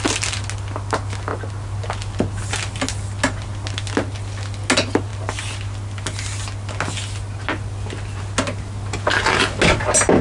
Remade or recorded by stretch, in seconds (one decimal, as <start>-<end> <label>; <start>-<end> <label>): 0.0-10.2 recorded